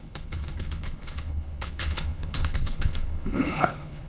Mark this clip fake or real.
fake